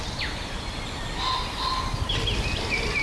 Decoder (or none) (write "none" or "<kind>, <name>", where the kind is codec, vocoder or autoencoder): none